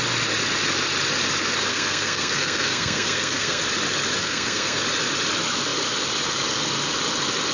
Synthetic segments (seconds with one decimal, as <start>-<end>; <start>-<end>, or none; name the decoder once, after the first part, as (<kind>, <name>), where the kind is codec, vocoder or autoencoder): 1.7-3.6 (codec, SNAC); 4.2-4.8